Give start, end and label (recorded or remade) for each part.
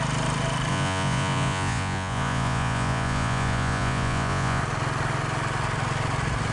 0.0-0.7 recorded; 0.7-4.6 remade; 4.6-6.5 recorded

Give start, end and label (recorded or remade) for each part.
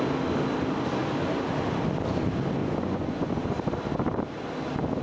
0.0-2.6 recorded; 2.6-3.4 remade; 3.4-5.0 recorded